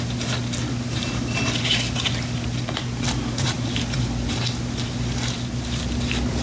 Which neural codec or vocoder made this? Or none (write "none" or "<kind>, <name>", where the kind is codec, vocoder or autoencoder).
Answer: none